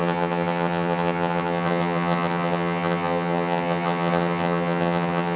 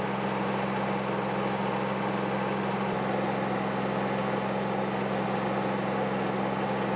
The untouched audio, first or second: second